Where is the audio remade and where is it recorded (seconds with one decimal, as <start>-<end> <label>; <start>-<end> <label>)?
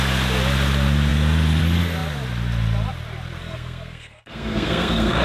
0.0-3.4 recorded; 3.4-5.2 remade